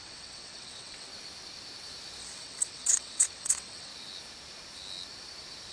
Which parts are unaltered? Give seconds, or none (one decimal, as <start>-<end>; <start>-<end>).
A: 1.1-2.2; 3.9-5.7